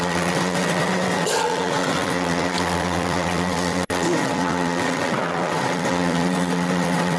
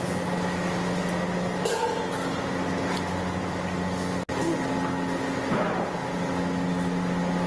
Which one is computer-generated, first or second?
first